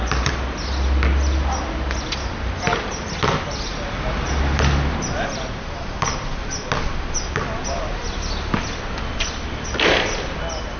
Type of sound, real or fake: real